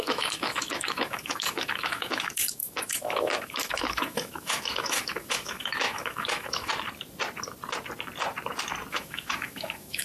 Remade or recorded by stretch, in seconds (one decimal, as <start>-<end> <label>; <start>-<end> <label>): 0.0-6.7 remade; 6.7-8.9 recorded; 8.9-10.0 remade